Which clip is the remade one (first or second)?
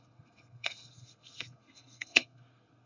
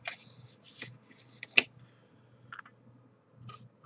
first